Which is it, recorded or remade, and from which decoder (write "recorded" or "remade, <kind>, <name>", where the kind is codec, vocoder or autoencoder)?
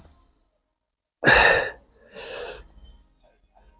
recorded